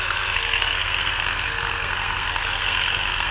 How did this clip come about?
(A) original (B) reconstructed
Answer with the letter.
B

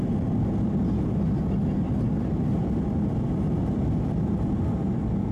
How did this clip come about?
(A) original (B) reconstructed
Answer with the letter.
A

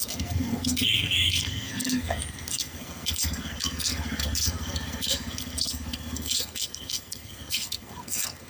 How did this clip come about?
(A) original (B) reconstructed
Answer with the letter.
B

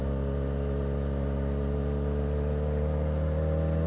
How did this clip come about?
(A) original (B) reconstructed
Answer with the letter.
A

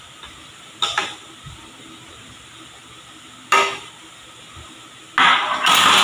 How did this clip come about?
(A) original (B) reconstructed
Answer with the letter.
A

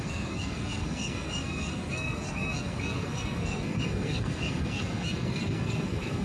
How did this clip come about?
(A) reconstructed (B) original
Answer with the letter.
A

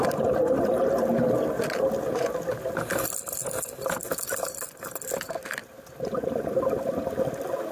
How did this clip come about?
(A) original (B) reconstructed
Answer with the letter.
A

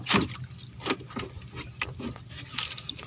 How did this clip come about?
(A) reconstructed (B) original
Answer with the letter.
B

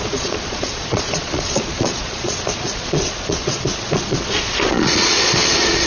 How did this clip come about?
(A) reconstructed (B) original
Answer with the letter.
A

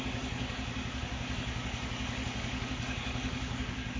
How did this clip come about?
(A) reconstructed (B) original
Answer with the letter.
A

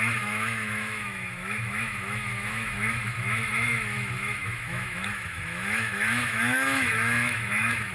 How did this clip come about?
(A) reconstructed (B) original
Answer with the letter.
A